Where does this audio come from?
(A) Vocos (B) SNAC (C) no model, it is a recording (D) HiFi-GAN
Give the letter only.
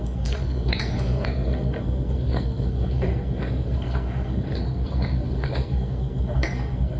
B